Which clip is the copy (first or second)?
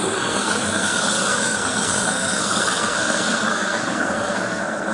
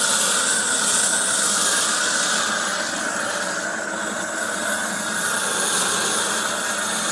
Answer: first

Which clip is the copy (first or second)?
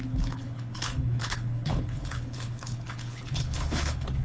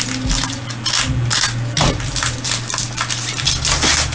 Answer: first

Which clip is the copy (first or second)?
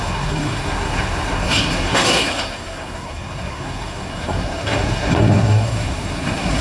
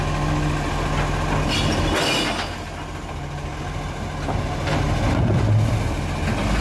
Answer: first